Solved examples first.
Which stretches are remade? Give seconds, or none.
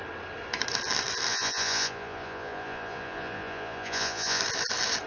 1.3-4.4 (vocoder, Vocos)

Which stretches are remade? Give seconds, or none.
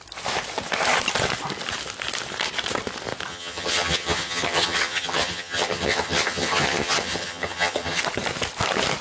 3.3-8.0 (vocoder, HiFi-GAN)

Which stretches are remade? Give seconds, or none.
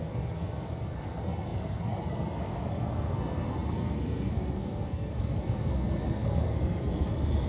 0.0-7.5 (codec, SNAC)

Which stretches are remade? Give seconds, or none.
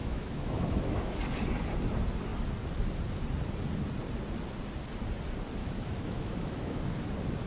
0.0-1.0 (autoencoder, DAC-VAE); 5.6-6.8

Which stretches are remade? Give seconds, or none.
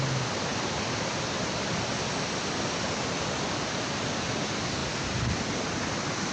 none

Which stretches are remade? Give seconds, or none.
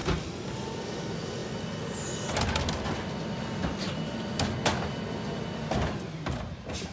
none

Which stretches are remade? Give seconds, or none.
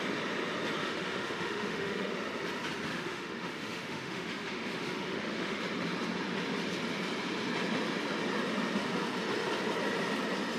0.8-2.1 (autoencoder, DAC-VAE); 2.9-5.6